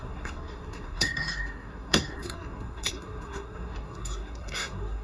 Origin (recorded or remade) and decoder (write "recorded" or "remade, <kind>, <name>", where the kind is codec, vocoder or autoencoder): remade, codec, SNAC